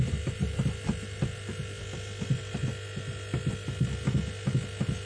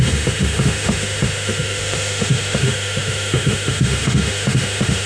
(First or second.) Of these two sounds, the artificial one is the second